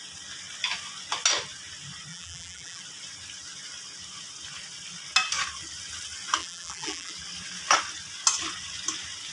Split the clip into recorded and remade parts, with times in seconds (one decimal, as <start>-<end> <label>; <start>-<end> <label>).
0.0-2.1 recorded; 2.1-2.8 remade; 2.8-6.4 recorded; 6.4-7.1 remade; 7.1-9.3 recorded